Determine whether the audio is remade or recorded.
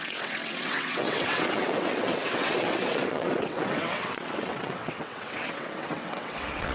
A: remade